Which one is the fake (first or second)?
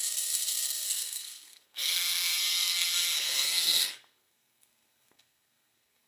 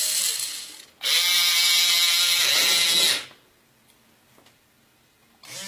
first